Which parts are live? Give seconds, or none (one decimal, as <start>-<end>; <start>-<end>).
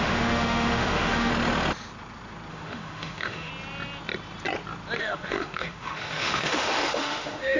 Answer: 1.3-2.5; 3.5-5.0